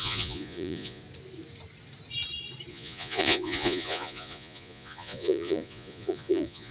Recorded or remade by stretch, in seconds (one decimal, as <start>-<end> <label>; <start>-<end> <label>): 0.0-1.0 remade; 1.0-2.7 recorded; 2.7-6.7 remade